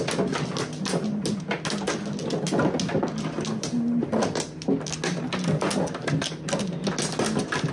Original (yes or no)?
yes